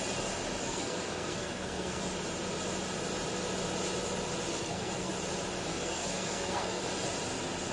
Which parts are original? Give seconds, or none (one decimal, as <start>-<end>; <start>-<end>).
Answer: 0.0-0.6; 2.0-4.5; 5.1-5.7; 6.8-7.7